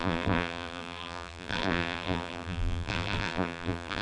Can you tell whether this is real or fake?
fake